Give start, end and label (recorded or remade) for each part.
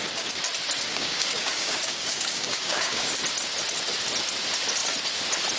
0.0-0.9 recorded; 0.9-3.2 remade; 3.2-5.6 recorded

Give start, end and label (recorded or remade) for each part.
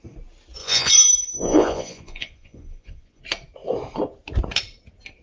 0.0-0.6 recorded; 0.6-3.2 remade; 3.2-5.2 recorded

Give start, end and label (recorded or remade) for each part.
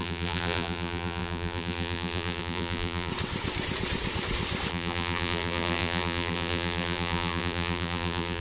0.0-3.1 remade; 3.1-4.7 recorded; 4.7-8.4 remade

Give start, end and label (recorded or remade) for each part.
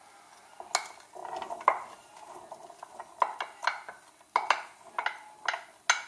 0.0-6.1 recorded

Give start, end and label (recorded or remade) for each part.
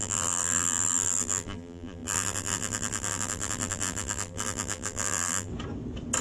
0.0-5.5 remade; 5.5-6.2 recorded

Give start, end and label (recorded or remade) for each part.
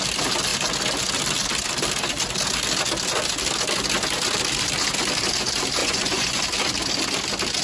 0.0-5.8 recorded; 5.8-6.4 remade; 6.4-7.6 recorded